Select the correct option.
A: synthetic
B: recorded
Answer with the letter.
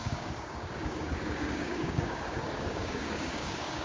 A